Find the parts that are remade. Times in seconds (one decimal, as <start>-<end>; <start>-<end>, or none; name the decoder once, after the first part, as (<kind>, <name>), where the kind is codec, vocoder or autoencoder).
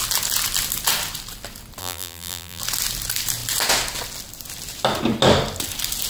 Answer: 1.8-2.6 (vocoder, BigVGAN v2)